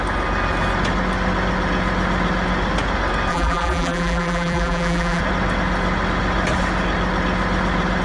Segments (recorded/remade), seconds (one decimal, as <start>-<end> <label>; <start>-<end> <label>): 0.0-3.3 recorded; 3.3-5.2 remade; 5.2-8.0 recorded